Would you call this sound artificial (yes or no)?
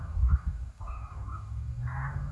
yes